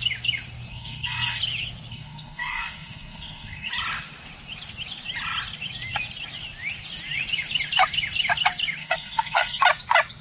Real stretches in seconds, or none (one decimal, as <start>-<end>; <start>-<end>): 0.0-0.7; 1.4-1.9; 3.7-8.8; 9.6-10.2